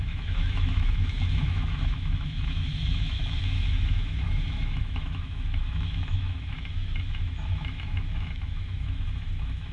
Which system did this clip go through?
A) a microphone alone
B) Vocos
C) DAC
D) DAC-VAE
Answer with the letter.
D